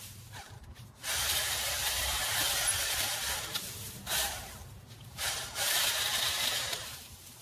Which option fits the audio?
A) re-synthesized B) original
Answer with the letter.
A